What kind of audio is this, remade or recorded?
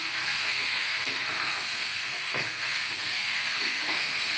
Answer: remade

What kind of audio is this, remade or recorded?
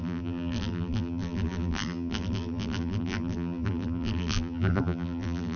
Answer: remade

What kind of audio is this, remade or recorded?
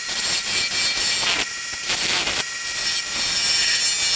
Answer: recorded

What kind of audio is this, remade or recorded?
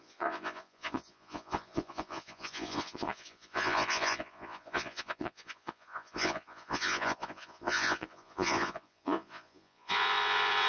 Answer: remade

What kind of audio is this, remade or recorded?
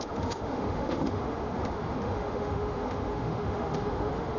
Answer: remade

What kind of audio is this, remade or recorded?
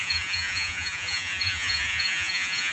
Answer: remade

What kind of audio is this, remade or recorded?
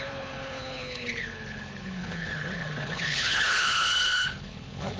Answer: remade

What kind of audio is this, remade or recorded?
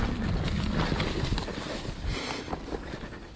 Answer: recorded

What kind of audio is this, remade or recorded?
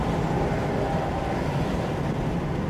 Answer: recorded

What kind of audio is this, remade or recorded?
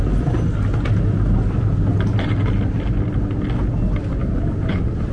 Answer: recorded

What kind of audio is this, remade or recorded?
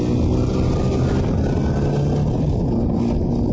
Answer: recorded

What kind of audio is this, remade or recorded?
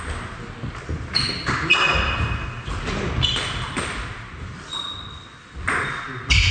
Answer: recorded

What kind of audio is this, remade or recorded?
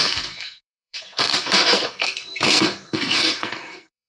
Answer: remade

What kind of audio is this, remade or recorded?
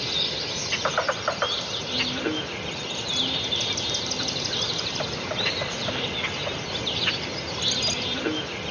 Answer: recorded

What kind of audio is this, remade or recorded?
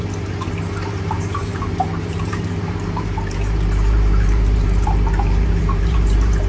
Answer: remade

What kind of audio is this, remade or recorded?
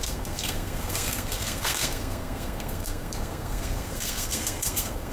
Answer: remade